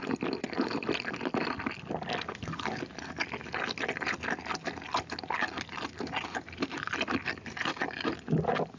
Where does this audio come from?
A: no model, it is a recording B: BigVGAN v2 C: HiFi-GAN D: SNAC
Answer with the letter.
A